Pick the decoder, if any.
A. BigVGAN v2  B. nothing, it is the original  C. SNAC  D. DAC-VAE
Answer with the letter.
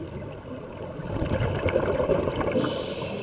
B